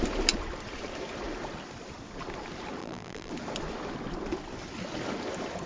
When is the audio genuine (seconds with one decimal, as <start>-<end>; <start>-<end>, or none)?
0.0-2.8; 3.3-5.7